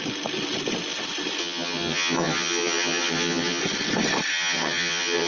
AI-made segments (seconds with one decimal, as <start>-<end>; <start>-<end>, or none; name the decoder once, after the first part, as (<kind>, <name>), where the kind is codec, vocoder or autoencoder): 1.4-3.6 (vocoder, HiFi-GAN); 4.3-5.3